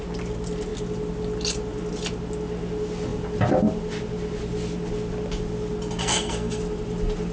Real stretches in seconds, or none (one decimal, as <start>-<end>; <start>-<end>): 0.0-6.0; 6.6-7.3